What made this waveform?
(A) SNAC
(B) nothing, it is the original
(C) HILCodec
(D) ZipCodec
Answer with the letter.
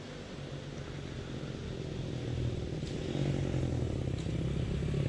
B